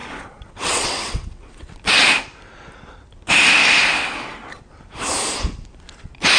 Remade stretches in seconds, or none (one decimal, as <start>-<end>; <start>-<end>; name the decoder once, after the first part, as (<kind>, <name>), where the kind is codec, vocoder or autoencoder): 0.0-1.7 (vocoder, WaveNeXt)

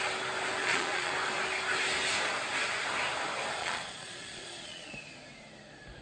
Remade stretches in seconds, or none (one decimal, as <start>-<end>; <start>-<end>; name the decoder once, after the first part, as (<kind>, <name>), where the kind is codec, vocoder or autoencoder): 0.6-1.1 (vocoder, Vocos); 3.6-4.9

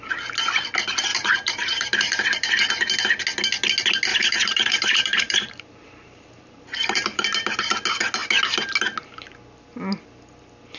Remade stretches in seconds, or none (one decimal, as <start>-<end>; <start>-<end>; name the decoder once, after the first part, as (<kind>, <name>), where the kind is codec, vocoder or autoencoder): 1.1-2.5 (vocoder, BigVGAN v2); 4.1-7.7

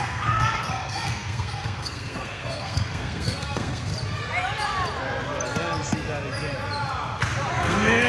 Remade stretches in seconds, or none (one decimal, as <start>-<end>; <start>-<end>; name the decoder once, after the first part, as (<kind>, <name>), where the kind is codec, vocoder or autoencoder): 0.0-3.9 (codec, SNAC); 7.5-8.1

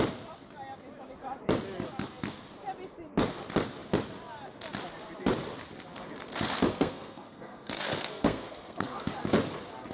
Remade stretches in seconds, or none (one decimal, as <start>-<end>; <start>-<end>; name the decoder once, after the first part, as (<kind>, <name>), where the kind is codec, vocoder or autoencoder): 6.7-9.1 (codec, SNAC)